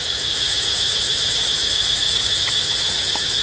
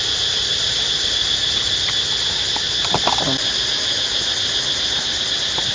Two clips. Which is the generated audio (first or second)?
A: first